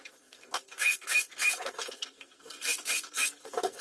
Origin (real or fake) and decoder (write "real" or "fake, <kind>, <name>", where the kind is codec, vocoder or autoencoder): fake, codec, SNAC